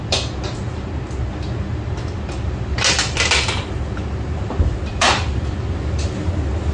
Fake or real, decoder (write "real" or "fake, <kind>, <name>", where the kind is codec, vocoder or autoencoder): real